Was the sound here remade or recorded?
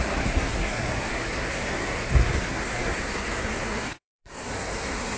remade